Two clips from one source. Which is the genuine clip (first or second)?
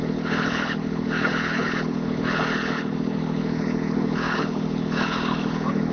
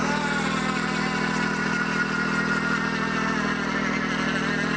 second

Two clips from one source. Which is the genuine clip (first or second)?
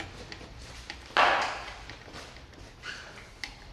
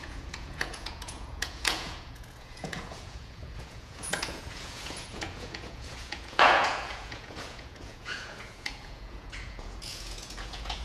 first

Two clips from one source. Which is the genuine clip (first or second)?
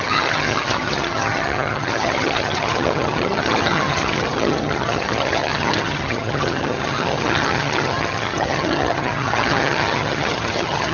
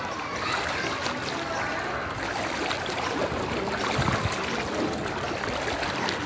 second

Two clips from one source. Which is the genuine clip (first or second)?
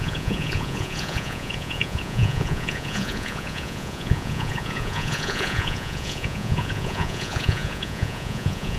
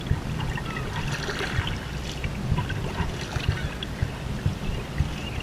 second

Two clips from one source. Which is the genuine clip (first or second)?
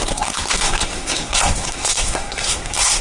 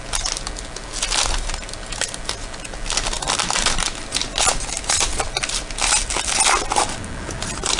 second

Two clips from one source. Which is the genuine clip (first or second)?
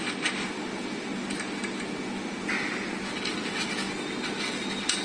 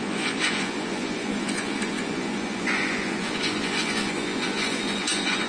first